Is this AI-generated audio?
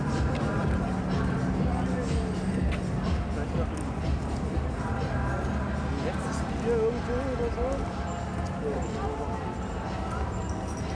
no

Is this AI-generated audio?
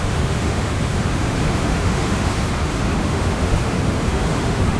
yes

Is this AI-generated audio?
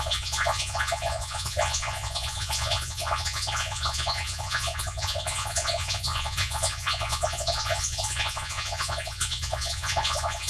yes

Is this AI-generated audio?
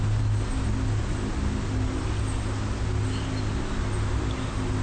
no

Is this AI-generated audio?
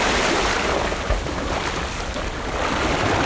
no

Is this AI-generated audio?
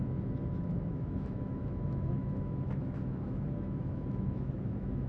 yes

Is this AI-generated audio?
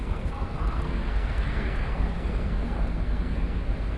yes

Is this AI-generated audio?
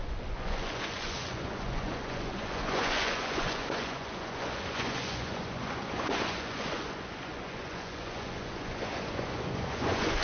yes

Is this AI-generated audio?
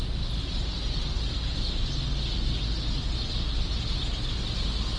no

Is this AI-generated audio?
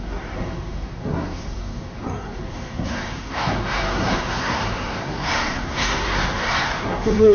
yes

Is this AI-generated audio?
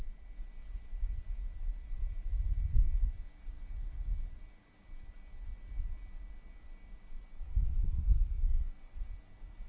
no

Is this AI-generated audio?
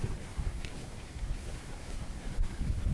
yes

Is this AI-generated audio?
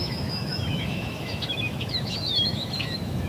yes